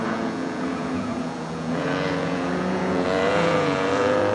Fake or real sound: fake